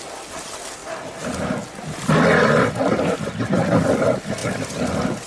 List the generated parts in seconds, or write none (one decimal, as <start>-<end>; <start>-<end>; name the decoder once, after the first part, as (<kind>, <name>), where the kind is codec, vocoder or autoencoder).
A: none